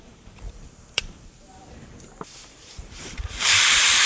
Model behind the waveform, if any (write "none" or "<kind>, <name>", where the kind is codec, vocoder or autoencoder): vocoder, BigVGAN v2